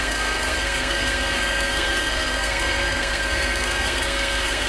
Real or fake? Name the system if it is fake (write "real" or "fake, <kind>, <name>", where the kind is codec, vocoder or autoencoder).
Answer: fake, codec, SNAC